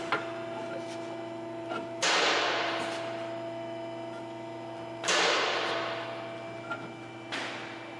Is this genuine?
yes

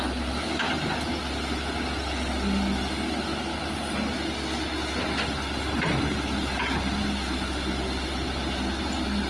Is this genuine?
yes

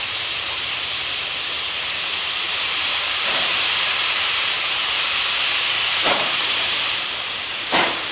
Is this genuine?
no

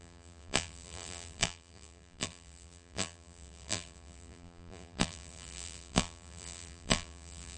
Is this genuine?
no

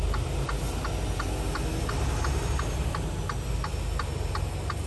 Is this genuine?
yes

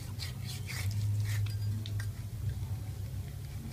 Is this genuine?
yes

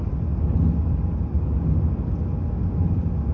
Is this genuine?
yes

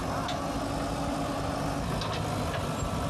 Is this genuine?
yes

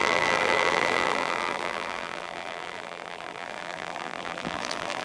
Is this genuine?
no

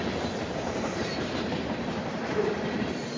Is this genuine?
no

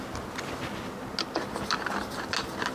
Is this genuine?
yes